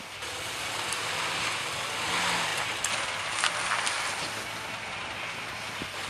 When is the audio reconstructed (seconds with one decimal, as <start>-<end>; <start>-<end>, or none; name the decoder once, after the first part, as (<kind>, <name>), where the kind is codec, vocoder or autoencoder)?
none

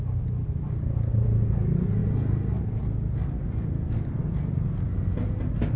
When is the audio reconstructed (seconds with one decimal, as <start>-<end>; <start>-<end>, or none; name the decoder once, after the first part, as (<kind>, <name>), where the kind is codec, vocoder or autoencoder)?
none

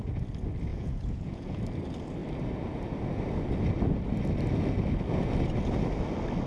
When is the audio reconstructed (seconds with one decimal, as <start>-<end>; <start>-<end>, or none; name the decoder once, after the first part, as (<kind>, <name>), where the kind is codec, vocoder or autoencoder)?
0.7-1.6 (vocoder, Vocos)